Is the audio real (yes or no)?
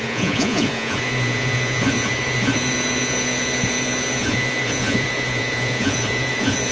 no